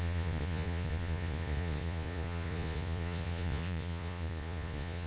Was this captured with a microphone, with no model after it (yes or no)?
no